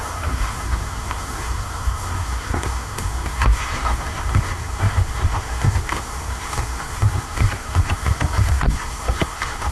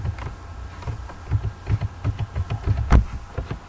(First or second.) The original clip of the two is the second